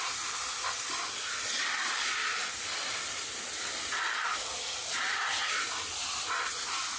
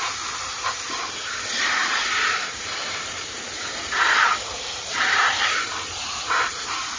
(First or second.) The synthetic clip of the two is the second